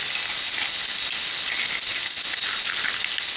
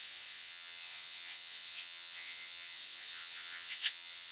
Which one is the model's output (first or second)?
second